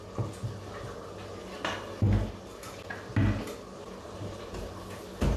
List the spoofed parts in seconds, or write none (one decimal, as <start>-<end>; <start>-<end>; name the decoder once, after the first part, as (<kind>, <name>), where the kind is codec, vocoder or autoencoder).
none